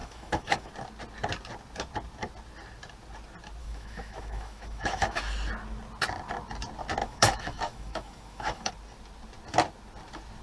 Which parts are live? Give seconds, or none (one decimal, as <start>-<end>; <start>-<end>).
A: 0.7-3.6; 5.2-7.0; 8.7-10.4